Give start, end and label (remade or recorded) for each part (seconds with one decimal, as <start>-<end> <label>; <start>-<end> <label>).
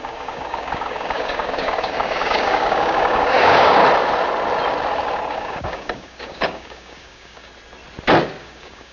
0.0-3.8 remade; 3.8-5.3 recorded; 5.3-7.5 remade; 7.5-8.4 recorded; 8.4-8.9 remade